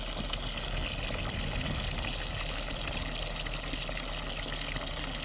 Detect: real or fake real